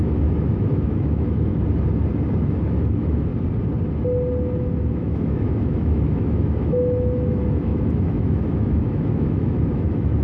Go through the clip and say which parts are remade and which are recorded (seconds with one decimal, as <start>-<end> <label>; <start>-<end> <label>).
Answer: 0.0-1.5 remade; 1.5-2.4 recorded; 2.4-3.3 remade; 3.3-4.9 recorded; 4.9-10.2 remade